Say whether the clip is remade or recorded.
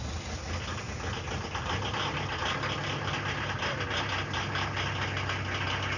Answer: recorded